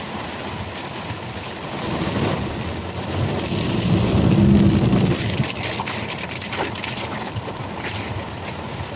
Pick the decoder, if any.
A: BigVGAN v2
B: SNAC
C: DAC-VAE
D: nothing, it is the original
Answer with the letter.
A